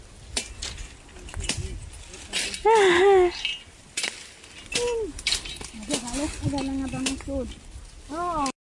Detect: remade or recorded recorded